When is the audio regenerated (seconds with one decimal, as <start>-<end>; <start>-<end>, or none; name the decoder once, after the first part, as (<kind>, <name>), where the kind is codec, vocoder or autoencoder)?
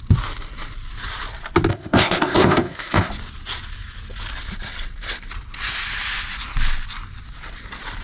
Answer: 1.7-3.1 (codec, ZipCodec)